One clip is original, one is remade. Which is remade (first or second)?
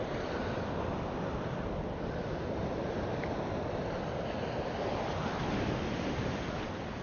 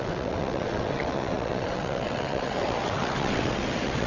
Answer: second